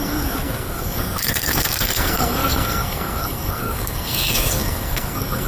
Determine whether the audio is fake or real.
fake